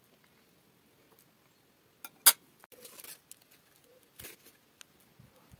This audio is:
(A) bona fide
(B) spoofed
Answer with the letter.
A